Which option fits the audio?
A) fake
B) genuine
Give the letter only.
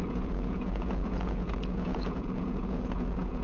A